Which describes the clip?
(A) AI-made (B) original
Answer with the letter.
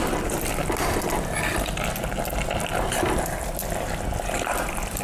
B